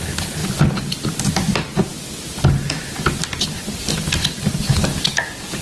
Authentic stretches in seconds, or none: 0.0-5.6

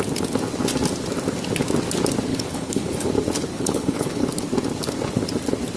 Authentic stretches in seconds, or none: 0.0-2.3; 3.1-3.5; 4.2-5.8

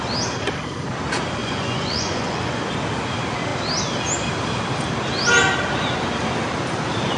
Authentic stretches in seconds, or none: 0.0-1.4; 2.6-7.2